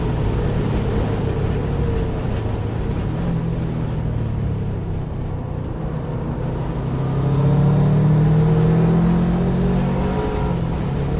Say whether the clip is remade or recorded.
recorded